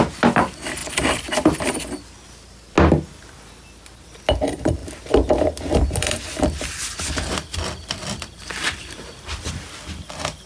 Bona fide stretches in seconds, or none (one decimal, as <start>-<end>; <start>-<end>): 0.0-4.8; 9.5-10.5